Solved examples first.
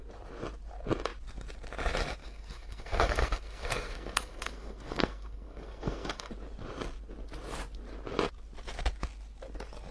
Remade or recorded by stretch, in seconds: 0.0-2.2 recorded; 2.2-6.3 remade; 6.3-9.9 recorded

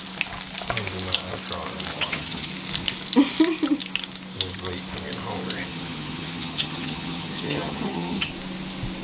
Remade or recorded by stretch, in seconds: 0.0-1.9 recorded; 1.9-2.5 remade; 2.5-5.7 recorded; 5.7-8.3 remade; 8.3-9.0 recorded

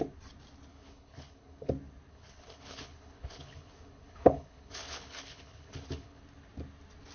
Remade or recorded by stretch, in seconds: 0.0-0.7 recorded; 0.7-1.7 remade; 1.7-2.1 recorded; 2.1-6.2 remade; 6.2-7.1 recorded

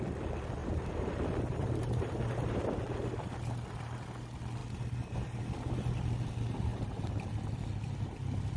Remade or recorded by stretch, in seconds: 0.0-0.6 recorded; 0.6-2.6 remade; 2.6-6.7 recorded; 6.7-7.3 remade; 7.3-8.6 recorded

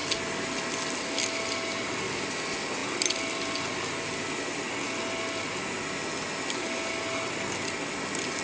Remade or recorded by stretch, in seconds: 0.0-8.4 recorded

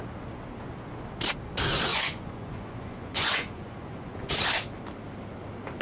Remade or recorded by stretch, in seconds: 0.0-1.9 recorded; 1.9-4.3 remade; 4.3-5.8 recorded

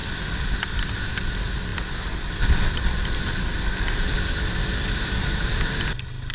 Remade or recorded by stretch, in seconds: 0.0-1.1 remade; 1.1-6.3 recorded

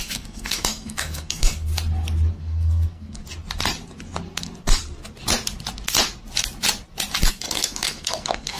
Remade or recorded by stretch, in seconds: 0.0-1.7 remade; 1.7-2.3 recorded; 2.3-3.2 remade; 3.2-7.3 recorded; 7.3-8.6 remade